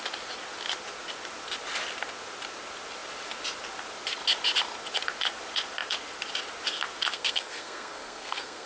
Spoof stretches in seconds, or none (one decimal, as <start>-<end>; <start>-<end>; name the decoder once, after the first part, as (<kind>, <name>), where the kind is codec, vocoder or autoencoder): 7.1-8.7 (codec, SNAC)